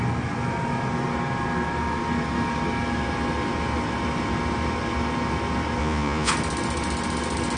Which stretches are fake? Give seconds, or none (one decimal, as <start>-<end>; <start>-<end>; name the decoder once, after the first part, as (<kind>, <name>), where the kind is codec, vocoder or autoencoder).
5.8-6.3 (vocoder, Vocos)